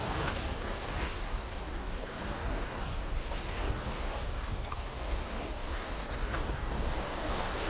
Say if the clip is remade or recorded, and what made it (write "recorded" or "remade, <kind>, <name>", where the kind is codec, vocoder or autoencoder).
remade, codec, DAC